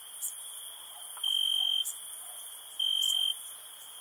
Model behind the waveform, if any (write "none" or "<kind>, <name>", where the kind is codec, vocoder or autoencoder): none